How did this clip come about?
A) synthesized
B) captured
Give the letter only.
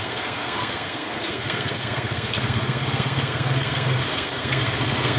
A